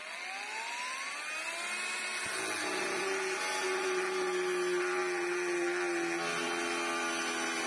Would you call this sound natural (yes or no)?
yes